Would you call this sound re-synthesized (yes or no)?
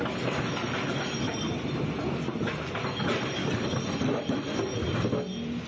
no